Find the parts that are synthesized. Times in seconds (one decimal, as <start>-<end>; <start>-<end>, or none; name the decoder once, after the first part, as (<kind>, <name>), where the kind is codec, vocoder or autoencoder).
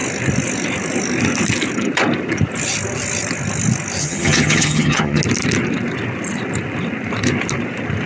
4.0-5.2 (vocoder, HiFi-GAN)